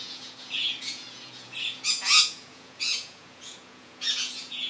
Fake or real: fake